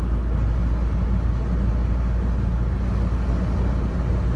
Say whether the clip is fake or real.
real